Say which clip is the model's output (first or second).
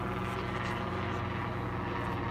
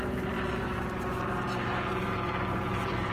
second